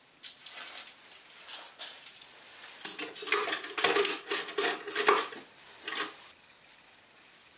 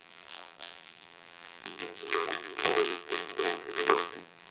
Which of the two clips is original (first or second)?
first